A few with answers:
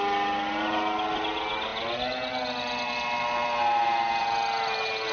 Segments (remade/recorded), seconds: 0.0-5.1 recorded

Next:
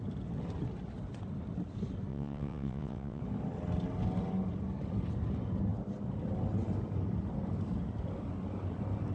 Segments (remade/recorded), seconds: 0.0-2.1 recorded; 2.1-3.2 remade; 3.2-9.1 recorded

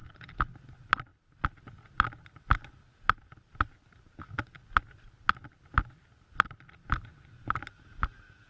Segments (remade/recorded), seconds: 0.0-8.5 recorded

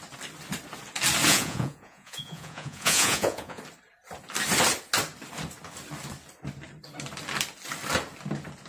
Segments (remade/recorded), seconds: 0.0-1.3 recorded; 1.3-3.6 remade; 3.6-8.7 recorded

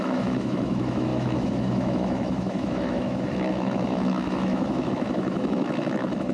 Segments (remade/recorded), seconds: 0.0-6.3 remade

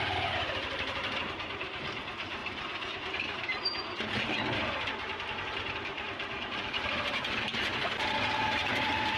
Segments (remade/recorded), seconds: 0.0-9.2 remade